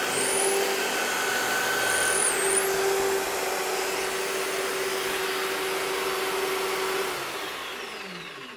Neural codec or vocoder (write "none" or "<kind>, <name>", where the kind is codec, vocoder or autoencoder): none